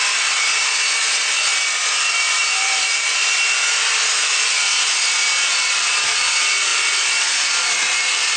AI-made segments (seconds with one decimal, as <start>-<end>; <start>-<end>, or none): 0.0-1.2; 2.4-8.4

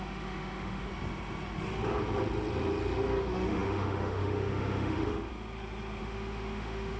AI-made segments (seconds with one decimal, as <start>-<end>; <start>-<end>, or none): 0.0-0.9; 3.2-5.3; 6.0-7.0

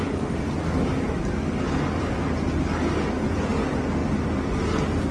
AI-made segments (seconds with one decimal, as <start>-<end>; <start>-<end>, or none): none

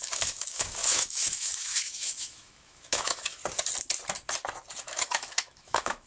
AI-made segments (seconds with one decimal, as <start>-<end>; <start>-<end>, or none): 0.0-3.4; 4.8-6.1

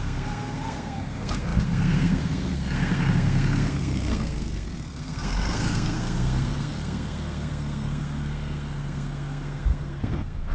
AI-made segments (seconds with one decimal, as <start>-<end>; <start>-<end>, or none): 0.0-10.5